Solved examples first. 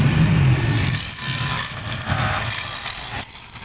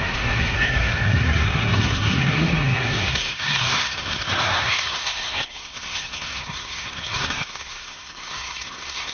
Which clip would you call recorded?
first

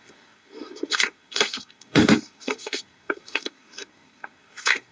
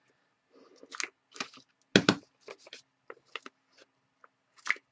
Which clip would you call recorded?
second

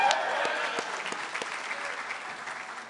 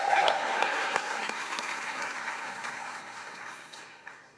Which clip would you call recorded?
first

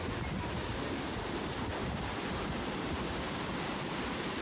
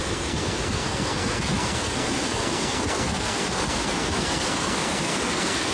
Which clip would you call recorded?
first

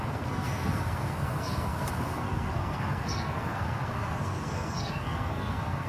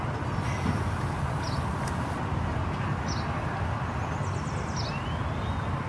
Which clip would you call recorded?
second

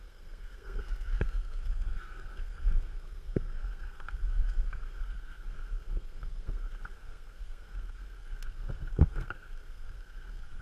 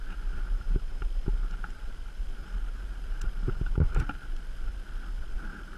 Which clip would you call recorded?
second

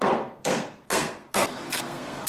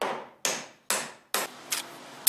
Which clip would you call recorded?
second